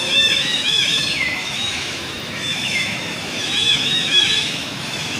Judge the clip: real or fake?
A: fake